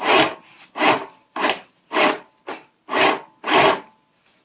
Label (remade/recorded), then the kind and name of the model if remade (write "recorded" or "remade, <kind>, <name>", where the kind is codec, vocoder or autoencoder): recorded